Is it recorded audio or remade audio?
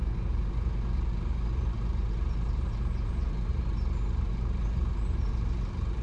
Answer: remade